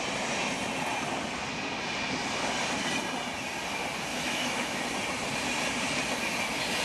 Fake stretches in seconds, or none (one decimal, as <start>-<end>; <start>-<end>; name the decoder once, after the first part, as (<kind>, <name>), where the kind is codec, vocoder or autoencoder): 4.1-4.8 (autoencoder, DAC-VAE)